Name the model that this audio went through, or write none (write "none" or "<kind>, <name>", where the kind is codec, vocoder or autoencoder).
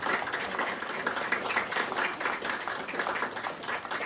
none